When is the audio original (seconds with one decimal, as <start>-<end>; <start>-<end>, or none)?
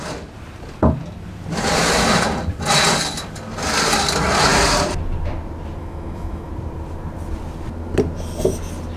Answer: 0.0-5.8; 6.5-9.0